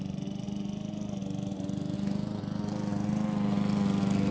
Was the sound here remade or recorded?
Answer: recorded